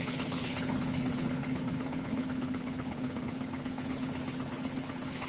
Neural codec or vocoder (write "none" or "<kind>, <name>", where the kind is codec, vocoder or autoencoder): codec, HILCodec